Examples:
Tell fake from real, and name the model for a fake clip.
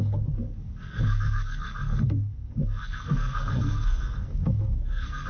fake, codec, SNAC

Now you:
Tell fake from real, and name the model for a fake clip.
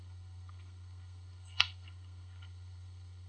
fake, codec, SNAC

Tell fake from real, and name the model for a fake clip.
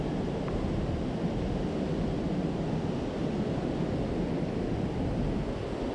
real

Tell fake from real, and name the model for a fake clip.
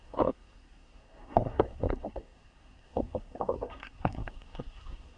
fake, codec, SNAC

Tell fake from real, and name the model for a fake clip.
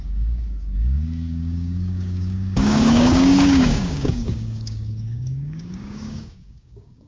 fake, codec, DAC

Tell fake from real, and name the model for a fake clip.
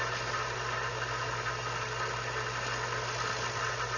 real